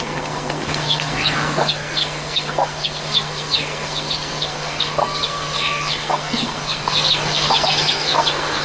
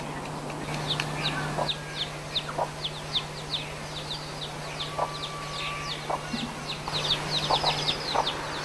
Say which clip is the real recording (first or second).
second